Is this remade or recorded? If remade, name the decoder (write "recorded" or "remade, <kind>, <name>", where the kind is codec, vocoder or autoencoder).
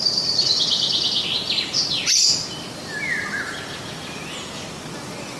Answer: recorded